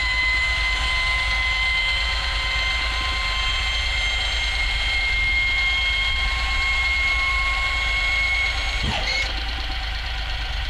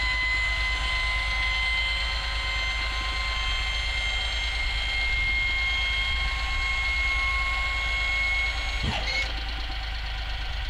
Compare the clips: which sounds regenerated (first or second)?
first